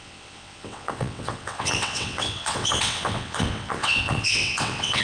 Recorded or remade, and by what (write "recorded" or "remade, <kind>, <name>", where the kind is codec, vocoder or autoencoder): remade, vocoder, WaveNeXt